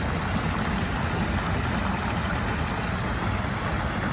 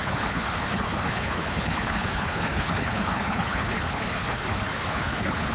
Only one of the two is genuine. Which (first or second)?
first